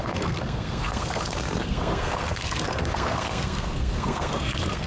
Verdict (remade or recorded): remade